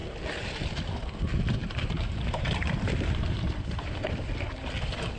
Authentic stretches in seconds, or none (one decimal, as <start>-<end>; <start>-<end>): 0.0-1.6; 4.7-5.2